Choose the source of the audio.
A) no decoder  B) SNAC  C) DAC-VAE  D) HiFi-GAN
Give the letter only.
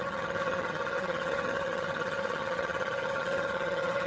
D